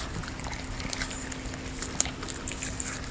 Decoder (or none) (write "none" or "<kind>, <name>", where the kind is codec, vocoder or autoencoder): none